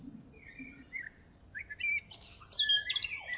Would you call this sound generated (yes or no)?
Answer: no